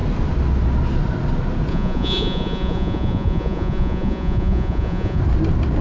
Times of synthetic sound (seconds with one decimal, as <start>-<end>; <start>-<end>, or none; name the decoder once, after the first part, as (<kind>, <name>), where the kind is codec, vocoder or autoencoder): 1.7-5.2 (vocoder, Vocos)